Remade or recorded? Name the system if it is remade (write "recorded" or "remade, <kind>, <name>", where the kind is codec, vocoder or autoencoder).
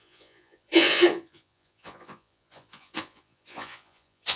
remade, vocoder, Vocos